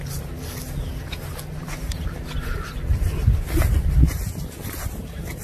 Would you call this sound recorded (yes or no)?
yes